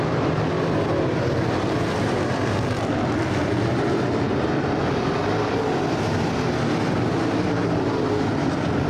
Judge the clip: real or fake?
fake